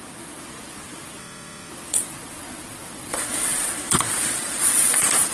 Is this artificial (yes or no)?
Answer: yes